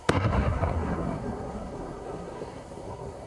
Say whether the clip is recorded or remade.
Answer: remade